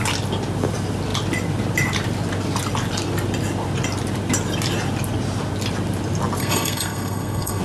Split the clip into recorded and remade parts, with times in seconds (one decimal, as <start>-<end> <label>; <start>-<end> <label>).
0.0-6.4 recorded; 6.4-7.6 remade